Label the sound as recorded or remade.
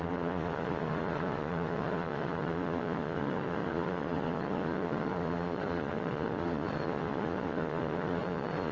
remade